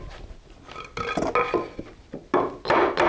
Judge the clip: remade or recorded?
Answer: recorded